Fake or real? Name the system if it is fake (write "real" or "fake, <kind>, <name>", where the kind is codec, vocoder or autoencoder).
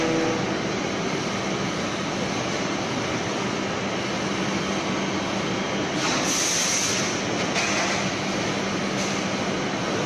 real